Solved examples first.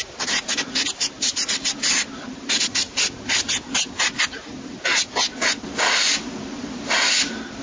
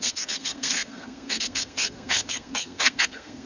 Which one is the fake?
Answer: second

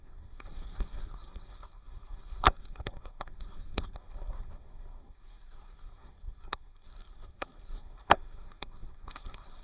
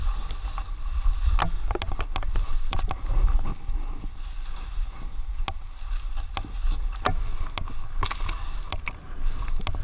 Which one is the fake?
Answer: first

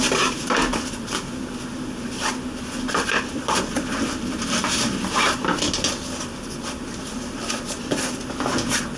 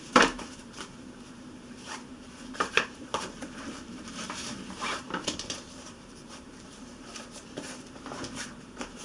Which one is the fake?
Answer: second